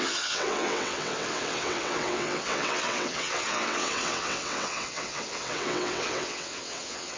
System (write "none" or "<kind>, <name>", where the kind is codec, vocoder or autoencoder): vocoder, WaveNeXt